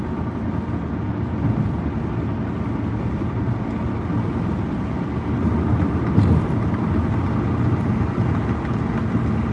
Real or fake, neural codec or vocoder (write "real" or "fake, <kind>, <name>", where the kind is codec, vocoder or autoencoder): real